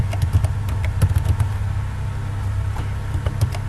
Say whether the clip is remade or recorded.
recorded